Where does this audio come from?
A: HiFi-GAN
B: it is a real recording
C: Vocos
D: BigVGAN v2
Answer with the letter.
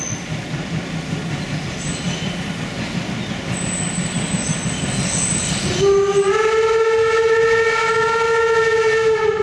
B